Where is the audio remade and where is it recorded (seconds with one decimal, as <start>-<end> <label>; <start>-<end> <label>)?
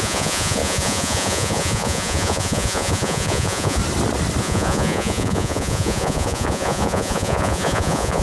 0.0-3.8 remade; 3.8-4.4 recorded; 4.4-8.2 remade